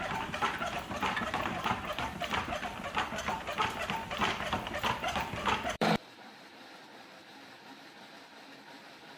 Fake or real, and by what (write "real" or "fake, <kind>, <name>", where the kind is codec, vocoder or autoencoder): fake, vocoder, BigVGAN v2